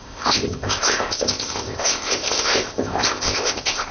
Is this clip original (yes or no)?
no